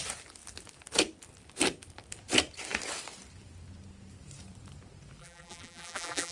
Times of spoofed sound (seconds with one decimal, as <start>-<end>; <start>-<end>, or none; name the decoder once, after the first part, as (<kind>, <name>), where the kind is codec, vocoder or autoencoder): 5.2-6.3 (vocoder, BigVGAN v2)